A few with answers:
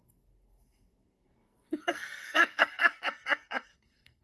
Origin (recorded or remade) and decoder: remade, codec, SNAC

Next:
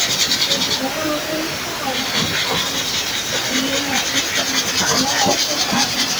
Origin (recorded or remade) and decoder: recorded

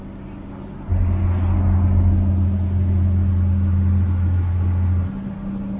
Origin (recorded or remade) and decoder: recorded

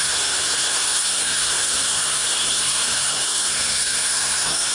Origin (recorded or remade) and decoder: remade, codec, SNAC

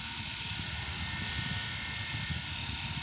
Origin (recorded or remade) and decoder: recorded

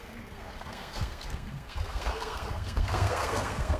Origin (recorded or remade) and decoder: remade, codec, SNAC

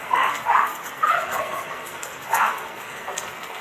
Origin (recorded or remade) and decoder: remade, codec, SNAC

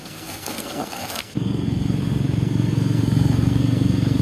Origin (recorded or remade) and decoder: remade, codec, SNAC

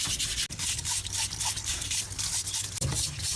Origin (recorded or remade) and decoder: recorded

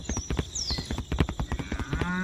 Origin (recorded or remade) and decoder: recorded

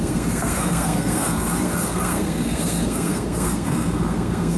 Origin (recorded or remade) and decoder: remade, codec, SNAC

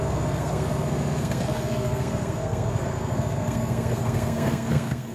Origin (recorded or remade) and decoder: remade, codec, SNAC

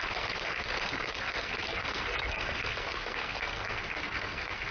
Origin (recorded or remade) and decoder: remade, codec, SNAC